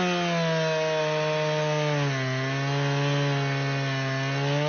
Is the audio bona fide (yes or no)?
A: yes